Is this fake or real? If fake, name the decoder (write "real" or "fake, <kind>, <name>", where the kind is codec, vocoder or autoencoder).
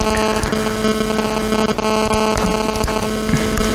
real